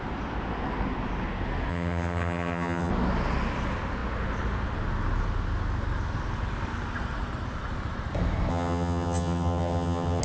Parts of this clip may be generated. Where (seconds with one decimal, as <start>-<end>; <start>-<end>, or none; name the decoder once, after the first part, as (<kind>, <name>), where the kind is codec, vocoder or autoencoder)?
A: 1.7-2.9 (vocoder, HiFi-GAN); 8.5-10.2